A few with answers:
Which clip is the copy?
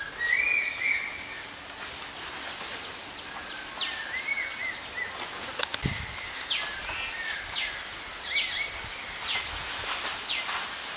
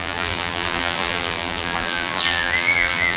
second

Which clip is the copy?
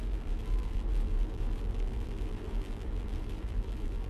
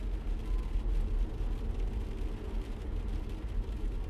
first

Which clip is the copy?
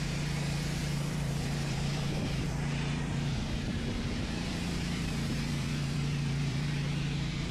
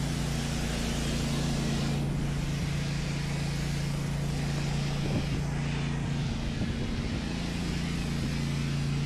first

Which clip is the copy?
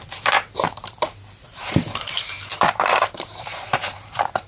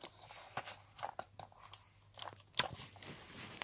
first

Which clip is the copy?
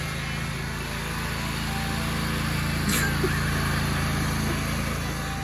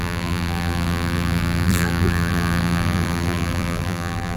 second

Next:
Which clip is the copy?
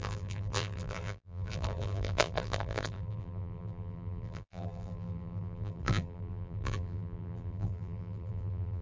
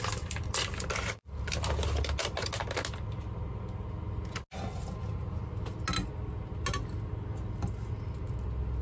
first